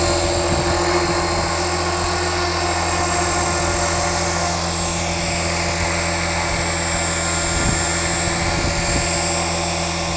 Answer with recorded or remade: recorded